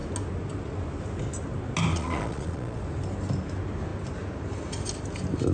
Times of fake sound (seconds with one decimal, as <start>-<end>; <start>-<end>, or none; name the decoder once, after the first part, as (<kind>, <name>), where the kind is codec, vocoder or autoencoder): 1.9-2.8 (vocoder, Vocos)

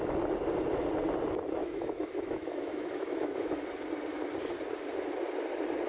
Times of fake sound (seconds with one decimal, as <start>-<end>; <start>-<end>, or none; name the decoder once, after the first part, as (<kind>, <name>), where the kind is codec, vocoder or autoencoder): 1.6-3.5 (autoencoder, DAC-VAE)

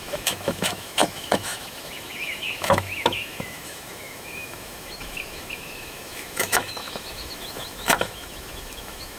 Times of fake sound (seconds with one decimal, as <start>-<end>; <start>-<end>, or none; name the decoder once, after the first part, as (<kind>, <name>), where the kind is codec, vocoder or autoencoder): 0.0-9.2 (autoencoder, DAC-VAE)